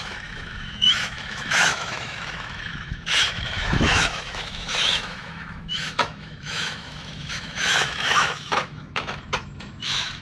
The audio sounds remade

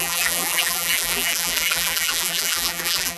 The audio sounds remade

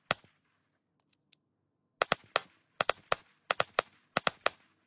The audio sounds recorded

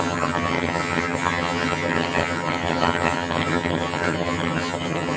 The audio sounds remade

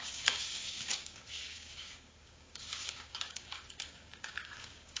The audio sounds remade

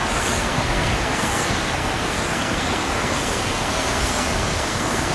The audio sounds remade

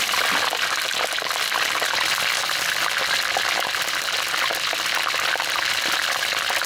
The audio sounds recorded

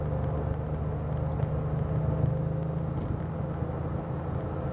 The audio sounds recorded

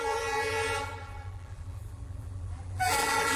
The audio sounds remade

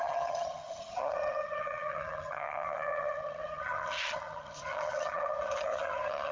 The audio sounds remade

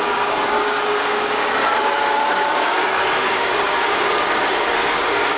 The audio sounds remade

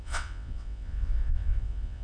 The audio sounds remade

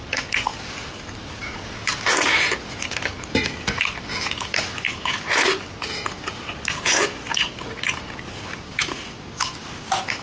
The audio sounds recorded